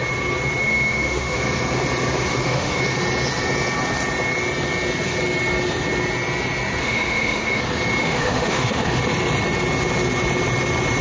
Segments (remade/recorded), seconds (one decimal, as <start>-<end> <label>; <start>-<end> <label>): 0.0-0.6 recorded; 0.6-1.4 remade; 1.4-2.3 recorded; 2.3-2.8 remade; 2.8-6.8 recorded; 6.8-7.6 remade; 7.6-8.0 recorded; 8.0-9.0 remade; 9.0-11.0 recorded